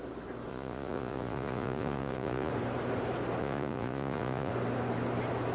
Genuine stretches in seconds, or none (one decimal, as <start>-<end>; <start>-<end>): 0.0-0.5; 2.5-3.4; 4.5-5.5